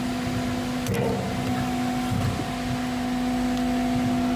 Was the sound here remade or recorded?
recorded